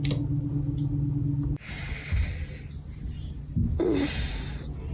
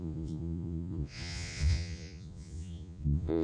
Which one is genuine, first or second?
first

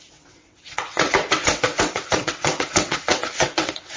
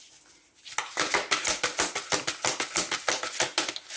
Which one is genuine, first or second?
second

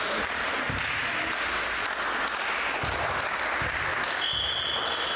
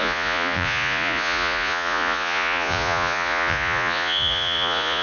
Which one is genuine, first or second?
first